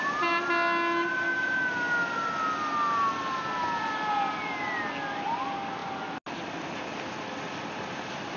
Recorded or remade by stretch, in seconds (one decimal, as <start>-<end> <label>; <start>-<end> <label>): 0.0-8.4 recorded